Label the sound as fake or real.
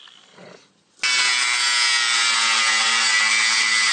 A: real